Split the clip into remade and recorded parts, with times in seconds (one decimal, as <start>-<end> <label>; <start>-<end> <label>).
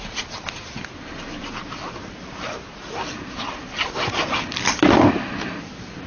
0.0-6.1 recorded